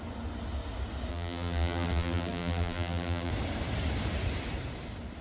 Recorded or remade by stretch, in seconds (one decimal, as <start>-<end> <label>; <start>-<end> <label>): 0.0-1.1 recorded; 1.1-3.3 remade; 3.3-5.2 recorded